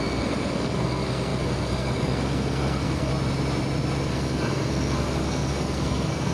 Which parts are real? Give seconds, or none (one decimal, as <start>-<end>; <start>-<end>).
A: 3.1-4.1